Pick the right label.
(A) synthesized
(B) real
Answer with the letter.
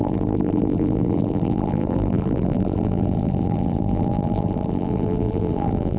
A